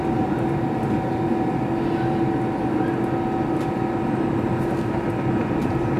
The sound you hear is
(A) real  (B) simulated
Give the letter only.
A